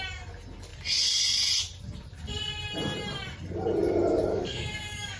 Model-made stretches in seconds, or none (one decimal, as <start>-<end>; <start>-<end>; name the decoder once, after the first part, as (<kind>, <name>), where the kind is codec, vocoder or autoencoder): 4.3-5.2 (codec, DAC)